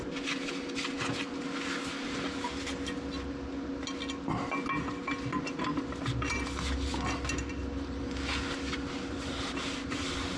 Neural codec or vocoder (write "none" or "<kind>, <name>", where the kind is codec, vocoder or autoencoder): none